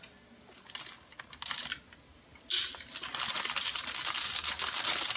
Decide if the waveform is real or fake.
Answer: real